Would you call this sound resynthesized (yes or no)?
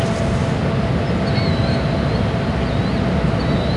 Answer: no